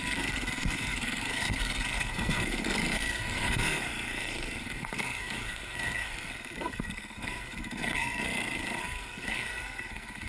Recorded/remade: remade